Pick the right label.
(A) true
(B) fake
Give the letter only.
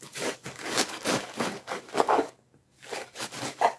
B